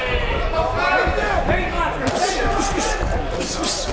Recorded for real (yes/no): yes